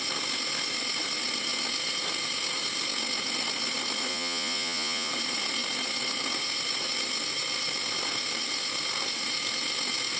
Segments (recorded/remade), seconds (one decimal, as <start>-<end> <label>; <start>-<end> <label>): 0.0-4.1 recorded; 4.1-5.1 remade; 5.1-10.2 recorded